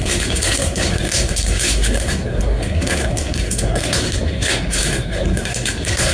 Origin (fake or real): fake